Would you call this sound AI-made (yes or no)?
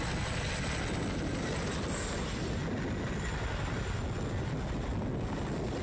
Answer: no